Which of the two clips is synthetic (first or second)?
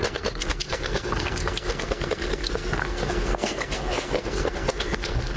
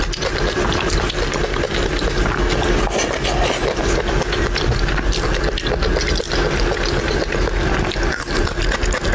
first